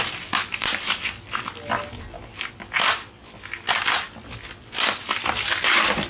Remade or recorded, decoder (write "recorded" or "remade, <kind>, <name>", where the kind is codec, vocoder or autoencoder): remade, vocoder, BigVGAN v2